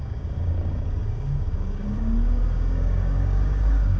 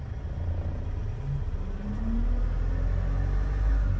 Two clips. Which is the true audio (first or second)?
second